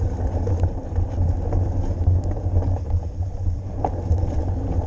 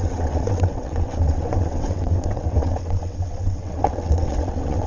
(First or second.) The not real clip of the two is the second